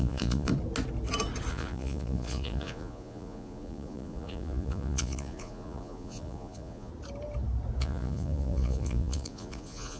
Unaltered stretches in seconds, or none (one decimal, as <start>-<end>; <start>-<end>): 0.5-1.5; 6.9-7.8